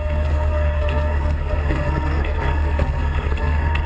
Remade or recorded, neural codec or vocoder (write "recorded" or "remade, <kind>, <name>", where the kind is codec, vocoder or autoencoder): remade, codec, SNAC